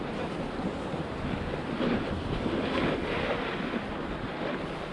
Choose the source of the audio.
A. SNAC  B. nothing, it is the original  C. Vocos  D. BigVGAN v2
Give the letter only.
B